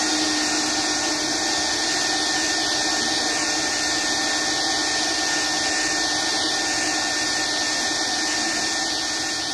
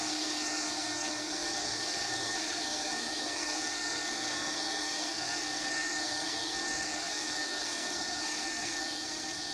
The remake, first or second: second